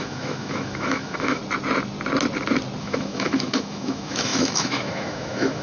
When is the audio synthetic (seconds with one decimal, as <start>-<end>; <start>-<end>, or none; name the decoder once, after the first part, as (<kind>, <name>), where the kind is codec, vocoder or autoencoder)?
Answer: 0.0-1.4 (autoencoder, DAC-VAE); 2.8-5.6